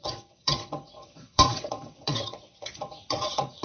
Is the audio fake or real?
fake